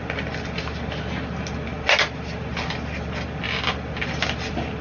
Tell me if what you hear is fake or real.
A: real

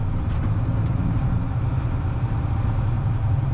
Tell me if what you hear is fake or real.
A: fake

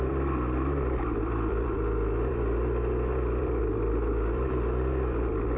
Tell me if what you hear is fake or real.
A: fake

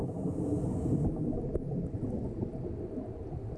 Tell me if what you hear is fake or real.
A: real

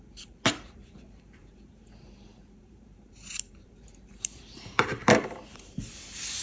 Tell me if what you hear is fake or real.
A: fake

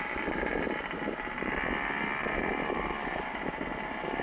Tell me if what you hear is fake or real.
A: fake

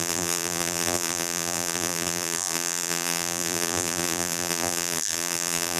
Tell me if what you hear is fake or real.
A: fake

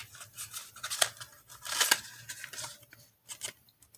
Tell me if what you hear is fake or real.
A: real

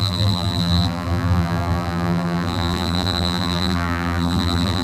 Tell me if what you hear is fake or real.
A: fake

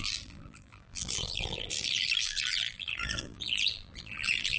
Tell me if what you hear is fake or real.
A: fake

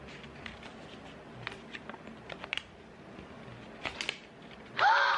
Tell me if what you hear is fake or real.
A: real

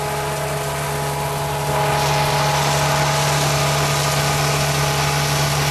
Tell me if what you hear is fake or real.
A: real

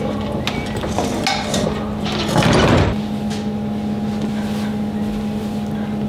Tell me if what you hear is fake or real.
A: real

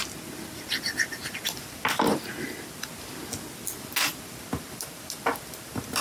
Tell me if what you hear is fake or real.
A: real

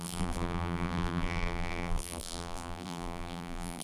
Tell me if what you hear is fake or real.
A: fake